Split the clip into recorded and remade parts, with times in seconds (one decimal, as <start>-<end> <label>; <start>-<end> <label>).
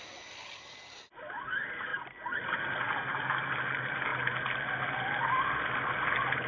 0.0-6.5 recorded